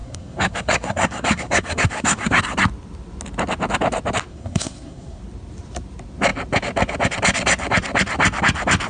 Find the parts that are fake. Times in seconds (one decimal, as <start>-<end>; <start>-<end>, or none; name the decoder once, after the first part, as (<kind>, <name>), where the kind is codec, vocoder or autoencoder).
0.0-2.4 (codec, SNAC); 4.3-5.2